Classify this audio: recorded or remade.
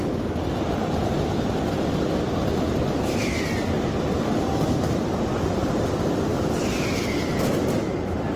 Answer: recorded